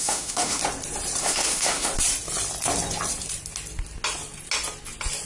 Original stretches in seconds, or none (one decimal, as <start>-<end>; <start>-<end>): 0.6-1.2; 1.9-5.3